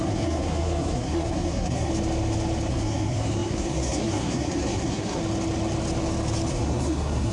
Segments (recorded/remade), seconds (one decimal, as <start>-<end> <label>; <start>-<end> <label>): 0.0-1.9 remade; 1.9-2.7 recorded; 2.7-5.2 remade; 5.2-6.5 recorded; 6.5-7.3 remade